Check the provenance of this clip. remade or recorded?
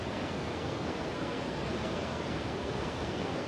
remade